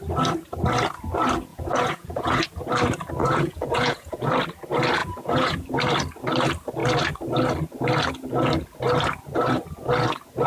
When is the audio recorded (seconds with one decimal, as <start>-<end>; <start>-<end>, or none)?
0.0-1.5; 2.4-3.2; 4.3-5.0; 5.7-10.5